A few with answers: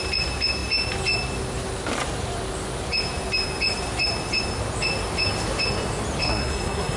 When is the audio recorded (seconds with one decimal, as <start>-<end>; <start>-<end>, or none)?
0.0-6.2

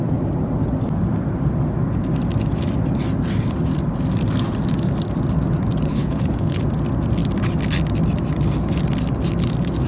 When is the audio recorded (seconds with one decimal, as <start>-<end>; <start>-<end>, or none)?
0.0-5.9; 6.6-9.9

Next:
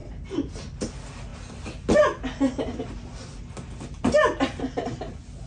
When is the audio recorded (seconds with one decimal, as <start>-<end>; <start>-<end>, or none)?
0.0-5.5

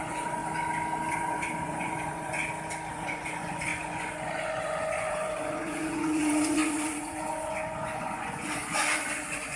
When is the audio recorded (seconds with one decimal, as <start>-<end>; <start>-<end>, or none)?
0.4-1.1; 2.4-2.9

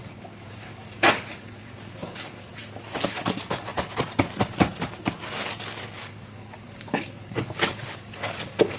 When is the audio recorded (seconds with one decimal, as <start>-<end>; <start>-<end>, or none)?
2.5-3.1; 3.7-6.0

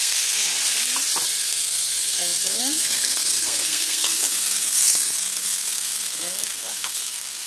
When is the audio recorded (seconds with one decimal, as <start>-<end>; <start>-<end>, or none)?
0.5-1.4

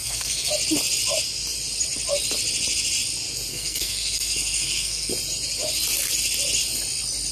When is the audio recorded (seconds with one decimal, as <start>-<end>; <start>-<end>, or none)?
0.5-3.5; 5.1-7.3